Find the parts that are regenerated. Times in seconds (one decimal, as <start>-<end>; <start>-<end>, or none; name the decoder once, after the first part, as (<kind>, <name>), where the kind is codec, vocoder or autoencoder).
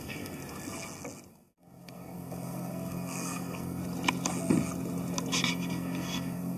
0.0-0.4 (codec, SNAC); 1.3-3.8; 5.5-6.6